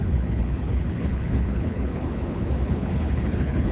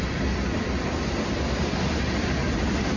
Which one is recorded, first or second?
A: second